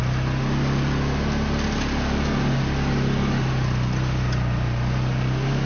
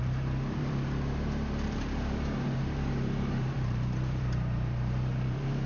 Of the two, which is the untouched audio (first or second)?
first